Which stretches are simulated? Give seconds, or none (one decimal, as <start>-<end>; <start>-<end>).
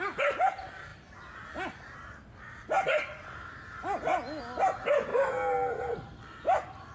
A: none